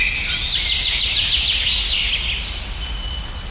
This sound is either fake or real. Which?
real